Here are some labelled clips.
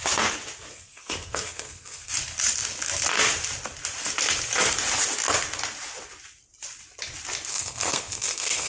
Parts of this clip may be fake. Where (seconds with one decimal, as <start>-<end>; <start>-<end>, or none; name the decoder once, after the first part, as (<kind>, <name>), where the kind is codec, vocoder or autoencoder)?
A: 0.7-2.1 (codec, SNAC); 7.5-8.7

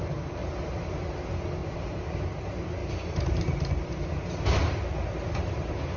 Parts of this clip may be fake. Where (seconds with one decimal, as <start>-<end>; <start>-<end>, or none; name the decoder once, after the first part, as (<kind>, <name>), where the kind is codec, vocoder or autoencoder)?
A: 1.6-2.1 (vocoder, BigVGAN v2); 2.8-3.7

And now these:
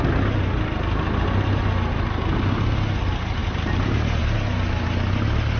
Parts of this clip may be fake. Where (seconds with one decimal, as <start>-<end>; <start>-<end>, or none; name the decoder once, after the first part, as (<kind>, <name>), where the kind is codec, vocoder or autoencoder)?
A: none

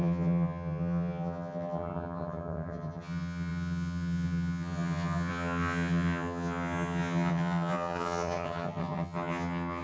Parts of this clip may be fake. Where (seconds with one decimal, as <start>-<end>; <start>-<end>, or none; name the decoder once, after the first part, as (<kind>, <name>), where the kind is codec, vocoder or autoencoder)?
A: 0.0-9.8 (vocoder, HiFi-GAN)

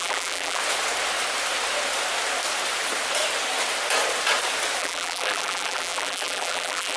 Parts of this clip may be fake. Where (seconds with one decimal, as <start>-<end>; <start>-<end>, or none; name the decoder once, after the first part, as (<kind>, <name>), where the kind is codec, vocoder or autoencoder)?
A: 0.0-0.6 (vocoder, BigVGAN v2); 4.8-7.0

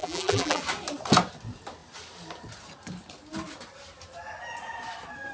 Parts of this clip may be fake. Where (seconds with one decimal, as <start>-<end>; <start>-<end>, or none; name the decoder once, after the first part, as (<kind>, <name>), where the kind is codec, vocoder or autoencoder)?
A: 0.0-0.6 (vocoder, BigVGAN v2)

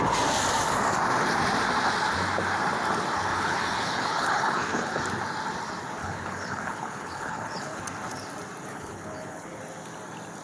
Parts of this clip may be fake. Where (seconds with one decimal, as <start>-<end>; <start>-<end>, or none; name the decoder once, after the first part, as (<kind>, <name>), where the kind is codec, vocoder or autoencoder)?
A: 3.3-5.0 (codec, HILCodec); 6.0-7.8; 8.7-9.6